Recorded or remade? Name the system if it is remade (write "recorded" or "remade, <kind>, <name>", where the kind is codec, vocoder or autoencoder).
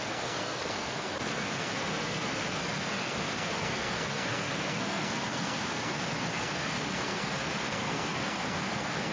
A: remade, codec, SNAC